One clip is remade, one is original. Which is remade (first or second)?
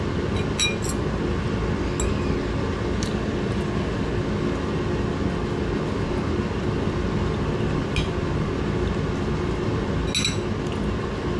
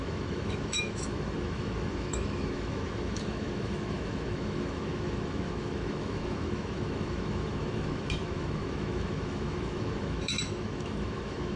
second